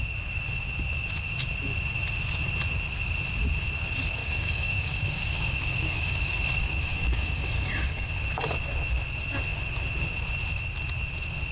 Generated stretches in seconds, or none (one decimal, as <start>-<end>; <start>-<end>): 4.2-8.1